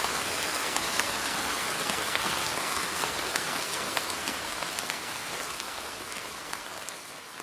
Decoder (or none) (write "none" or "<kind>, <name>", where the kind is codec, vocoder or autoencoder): codec, SNAC